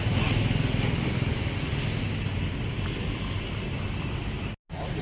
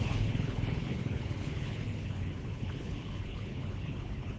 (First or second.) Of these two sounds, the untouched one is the first